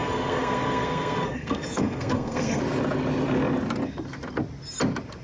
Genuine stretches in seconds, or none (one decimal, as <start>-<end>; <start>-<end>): 2.6-5.2